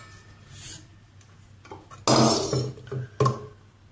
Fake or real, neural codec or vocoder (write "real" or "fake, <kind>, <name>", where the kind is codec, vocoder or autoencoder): real